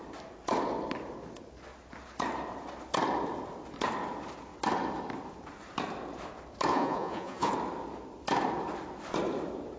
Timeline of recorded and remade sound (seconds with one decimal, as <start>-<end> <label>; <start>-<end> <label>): 0.0-6.7 recorded; 6.7-7.5 remade; 7.5-9.8 recorded

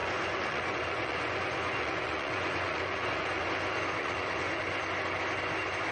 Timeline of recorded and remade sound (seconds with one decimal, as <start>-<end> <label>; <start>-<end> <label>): 0.0-3.5 remade; 3.5-4.0 recorded; 4.0-4.6 remade; 4.6-5.9 recorded

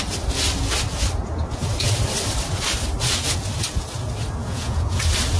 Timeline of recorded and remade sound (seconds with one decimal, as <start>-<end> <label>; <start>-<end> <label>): 0.0-4.4 recorded; 4.4-5.0 remade; 5.0-5.4 recorded

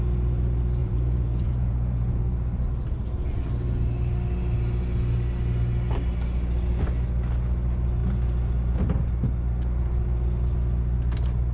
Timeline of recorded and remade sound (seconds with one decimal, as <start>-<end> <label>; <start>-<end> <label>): 0.0-0.8 recorded; 0.8-2.2 remade; 2.2-11.5 recorded

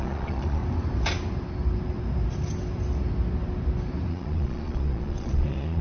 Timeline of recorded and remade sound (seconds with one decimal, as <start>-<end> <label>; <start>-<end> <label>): 0.0-0.6 remade; 0.6-4.1 recorded; 4.1-5.8 remade

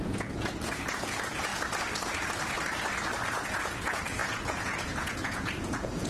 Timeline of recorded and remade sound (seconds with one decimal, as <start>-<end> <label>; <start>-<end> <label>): 0.0-1.5 remade; 1.5-3.3 recorded; 3.3-6.1 remade